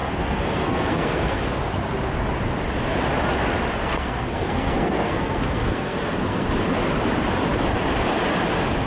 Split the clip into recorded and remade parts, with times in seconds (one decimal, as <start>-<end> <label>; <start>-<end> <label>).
0.0-1.4 remade; 1.4-3.8 recorded; 3.8-6.5 remade; 6.5-8.9 recorded

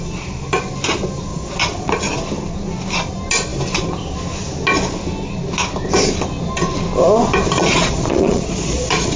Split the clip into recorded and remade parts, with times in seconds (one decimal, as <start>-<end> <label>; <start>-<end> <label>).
0.0-1.3 recorded; 1.3-1.9 remade; 1.9-7.6 recorded; 7.6-9.2 remade

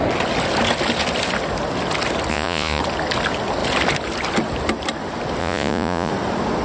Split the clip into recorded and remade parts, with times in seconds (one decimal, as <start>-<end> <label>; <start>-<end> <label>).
0.0-2.3 recorded; 2.3-2.8 remade; 2.8-5.4 recorded; 5.4-6.1 remade; 6.1-6.6 recorded

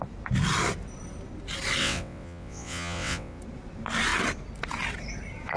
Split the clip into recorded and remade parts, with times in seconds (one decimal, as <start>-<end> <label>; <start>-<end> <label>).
0.0-1.8 recorded; 1.8-3.4 remade; 3.4-5.6 recorded